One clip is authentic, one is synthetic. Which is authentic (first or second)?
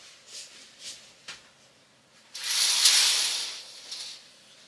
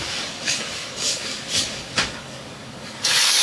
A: first